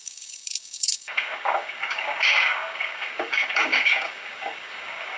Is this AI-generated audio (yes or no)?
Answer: yes